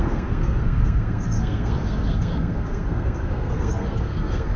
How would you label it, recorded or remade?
remade